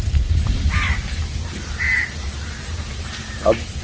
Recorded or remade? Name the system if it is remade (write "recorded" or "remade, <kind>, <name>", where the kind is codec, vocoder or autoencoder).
remade, vocoder, BigVGAN v2